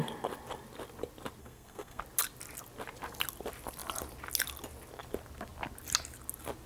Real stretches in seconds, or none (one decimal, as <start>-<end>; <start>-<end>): 0.0-1.4; 2.0-6.7